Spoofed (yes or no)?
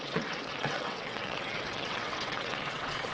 yes